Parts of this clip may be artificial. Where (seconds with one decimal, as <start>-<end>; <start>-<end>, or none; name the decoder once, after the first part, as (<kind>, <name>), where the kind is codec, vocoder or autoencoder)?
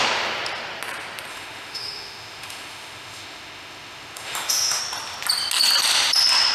1.3-4.8 (autoencoder, DAC-VAE)